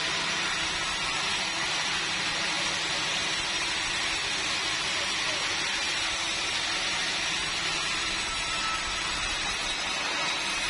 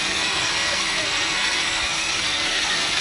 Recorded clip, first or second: first